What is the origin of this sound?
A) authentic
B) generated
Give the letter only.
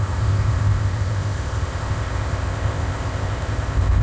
B